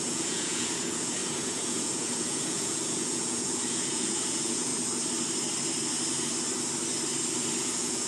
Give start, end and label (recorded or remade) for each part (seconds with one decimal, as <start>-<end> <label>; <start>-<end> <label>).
0.0-4.7 remade; 4.7-7.6 recorded; 7.6-8.1 remade